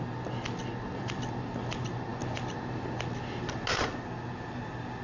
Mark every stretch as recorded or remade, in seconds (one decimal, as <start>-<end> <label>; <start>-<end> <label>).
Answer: 0.0-5.0 recorded